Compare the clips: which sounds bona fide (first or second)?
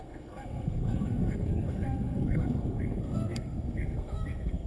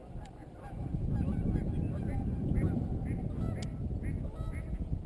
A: second